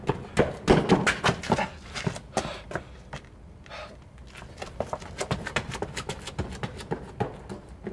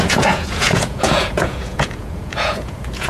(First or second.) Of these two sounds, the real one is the first